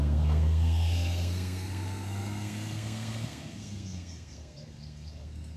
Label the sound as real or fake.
fake